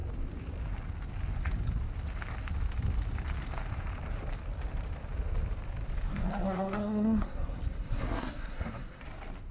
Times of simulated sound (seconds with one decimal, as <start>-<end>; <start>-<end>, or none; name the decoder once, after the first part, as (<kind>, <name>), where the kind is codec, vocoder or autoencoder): 6.1-9.0 (codec, SNAC)